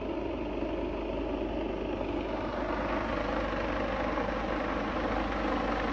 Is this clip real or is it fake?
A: real